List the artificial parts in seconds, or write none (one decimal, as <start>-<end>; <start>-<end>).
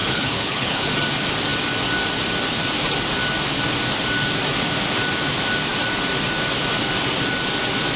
0.0-0.9